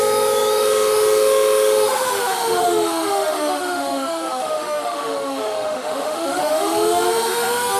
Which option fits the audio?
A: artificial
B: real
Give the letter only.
A